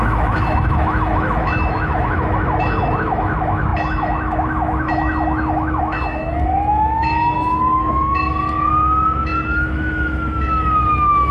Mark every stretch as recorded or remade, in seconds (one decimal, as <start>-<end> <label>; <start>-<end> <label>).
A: 0.0-11.3 remade